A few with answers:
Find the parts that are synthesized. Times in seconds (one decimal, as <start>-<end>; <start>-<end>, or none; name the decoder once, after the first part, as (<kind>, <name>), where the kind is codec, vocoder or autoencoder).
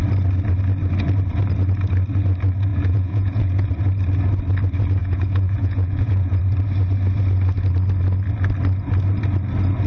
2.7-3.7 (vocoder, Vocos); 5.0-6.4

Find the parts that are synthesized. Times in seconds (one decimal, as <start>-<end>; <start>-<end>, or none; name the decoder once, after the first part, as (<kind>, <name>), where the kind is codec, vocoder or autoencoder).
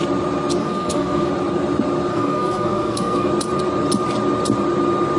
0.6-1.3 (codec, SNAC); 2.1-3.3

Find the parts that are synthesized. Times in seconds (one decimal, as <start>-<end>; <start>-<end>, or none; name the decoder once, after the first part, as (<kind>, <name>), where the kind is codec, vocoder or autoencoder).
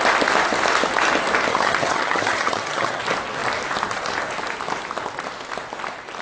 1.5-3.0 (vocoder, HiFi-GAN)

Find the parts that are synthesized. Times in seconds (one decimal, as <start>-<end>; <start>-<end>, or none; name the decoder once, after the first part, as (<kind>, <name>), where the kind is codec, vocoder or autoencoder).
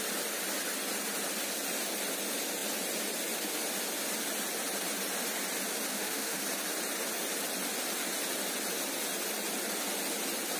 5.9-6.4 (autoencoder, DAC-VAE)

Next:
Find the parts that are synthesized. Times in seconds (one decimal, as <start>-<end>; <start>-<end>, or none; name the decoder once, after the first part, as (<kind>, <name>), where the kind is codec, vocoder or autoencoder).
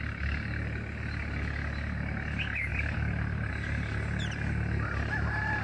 2.7-3.5 (vocoder, BigVGAN v2)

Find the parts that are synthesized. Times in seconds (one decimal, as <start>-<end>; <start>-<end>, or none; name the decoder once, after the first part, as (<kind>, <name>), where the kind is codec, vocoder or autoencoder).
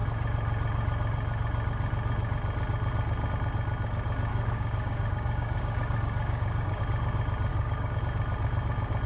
4.3-6.8 (codec, DAC); 7.5-8.0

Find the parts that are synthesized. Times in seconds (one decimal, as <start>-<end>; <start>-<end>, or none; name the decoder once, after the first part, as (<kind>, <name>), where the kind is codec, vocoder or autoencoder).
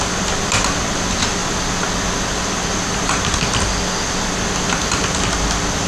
none